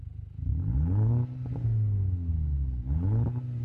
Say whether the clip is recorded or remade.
recorded